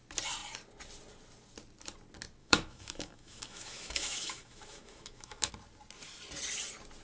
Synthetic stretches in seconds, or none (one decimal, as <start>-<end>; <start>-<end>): 2.4-5.5